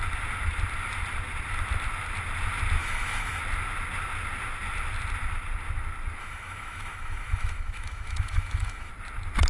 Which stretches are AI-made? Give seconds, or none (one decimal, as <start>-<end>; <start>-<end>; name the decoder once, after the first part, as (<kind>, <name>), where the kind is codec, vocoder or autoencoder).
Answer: 2.8-3.4 (autoencoder, DAC-VAE); 6.2-8.9